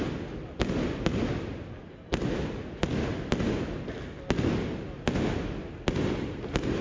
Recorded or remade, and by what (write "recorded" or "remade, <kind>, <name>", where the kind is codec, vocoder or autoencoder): recorded